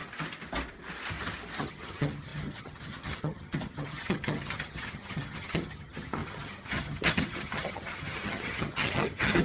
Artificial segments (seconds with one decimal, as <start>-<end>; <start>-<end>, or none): 1.6-9.4